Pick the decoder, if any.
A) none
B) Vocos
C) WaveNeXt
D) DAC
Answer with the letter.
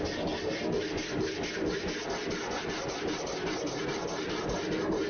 A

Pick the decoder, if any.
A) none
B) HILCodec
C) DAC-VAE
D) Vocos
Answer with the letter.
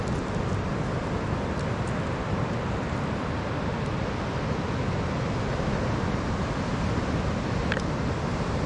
A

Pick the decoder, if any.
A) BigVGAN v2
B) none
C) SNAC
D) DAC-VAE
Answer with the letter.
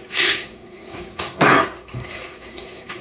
C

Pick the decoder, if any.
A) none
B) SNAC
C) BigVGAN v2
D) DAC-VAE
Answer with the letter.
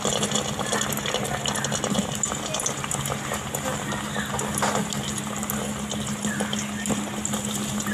A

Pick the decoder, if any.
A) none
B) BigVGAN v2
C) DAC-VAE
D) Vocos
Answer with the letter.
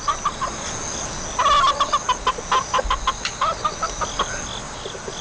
A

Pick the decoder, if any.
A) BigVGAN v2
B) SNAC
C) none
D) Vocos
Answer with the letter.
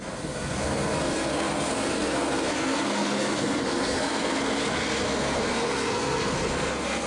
B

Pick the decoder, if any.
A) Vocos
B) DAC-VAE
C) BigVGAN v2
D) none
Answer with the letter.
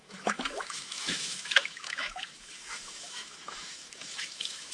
B